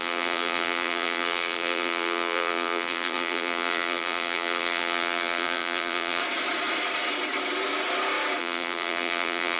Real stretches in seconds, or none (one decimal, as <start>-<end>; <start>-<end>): 6.2-8.4